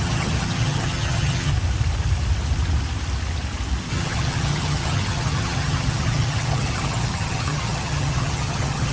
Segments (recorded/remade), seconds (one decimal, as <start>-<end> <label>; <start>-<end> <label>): 0.0-1.5 remade; 1.5-3.9 recorded; 3.9-8.9 remade